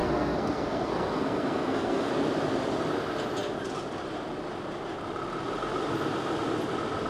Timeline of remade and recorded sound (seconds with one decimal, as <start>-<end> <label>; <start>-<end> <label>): 0.0-2.1 remade; 2.1-7.1 recorded